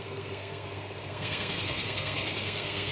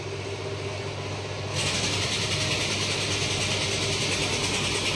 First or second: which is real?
second